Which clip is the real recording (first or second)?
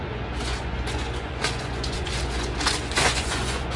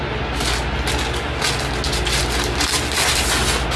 second